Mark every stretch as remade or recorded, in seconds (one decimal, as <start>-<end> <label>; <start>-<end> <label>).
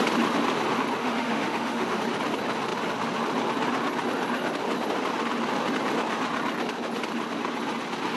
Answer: 0.0-1.0 recorded; 1.0-2.0 remade; 2.0-8.2 recorded